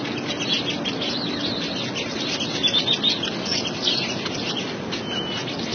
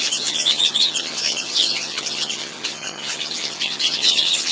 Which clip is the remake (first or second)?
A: second